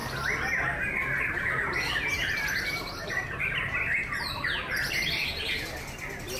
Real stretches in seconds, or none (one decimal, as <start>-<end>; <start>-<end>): 0.0-2.1; 4.4-6.4